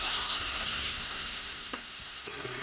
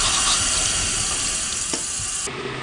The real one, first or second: second